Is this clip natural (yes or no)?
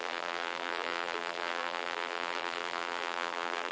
no